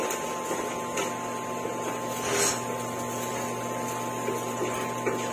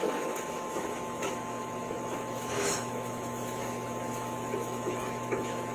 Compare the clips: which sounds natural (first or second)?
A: first